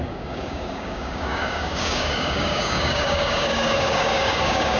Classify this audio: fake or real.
fake